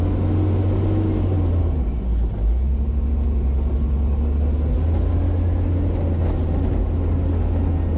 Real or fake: real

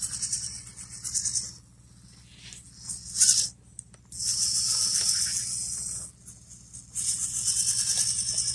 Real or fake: real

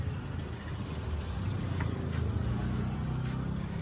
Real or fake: real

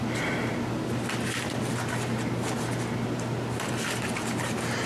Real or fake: real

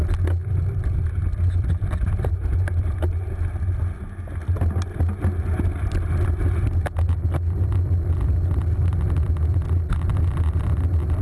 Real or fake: real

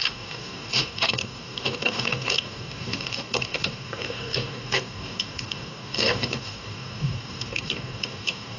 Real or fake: fake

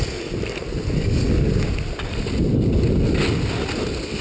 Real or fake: real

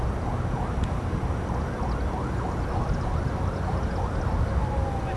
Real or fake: real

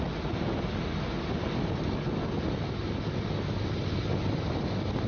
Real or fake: real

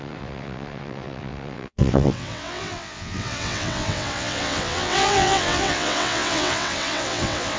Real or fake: fake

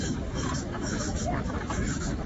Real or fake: fake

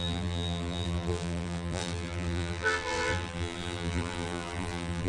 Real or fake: fake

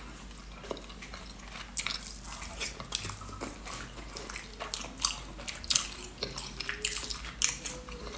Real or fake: real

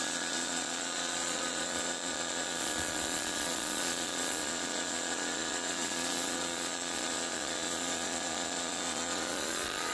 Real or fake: fake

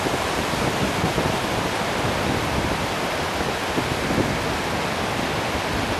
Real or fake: real